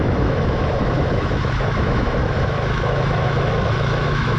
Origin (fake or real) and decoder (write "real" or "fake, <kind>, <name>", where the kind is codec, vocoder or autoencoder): fake, autoencoder, DAC-VAE